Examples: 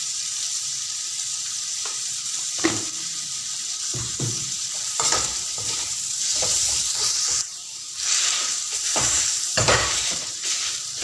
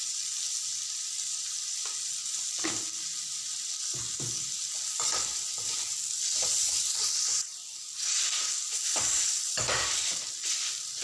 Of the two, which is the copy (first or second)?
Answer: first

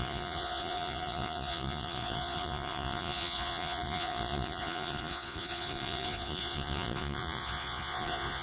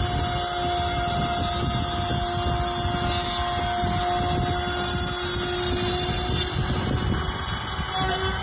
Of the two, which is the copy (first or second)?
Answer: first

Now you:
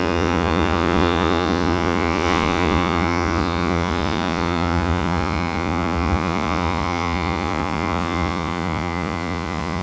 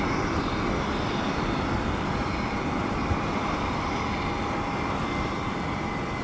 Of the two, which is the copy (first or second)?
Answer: first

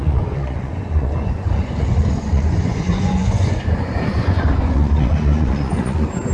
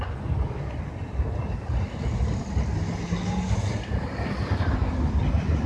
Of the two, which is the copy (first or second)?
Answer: first